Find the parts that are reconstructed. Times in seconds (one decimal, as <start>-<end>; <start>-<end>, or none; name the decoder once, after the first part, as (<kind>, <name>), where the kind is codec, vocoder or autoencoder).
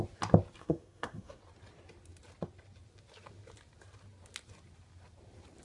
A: 0.6-1.4 (codec, SNAC)